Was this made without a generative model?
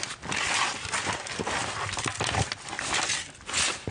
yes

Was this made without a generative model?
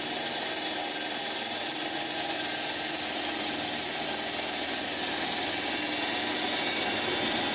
yes